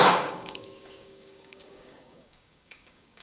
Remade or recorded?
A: remade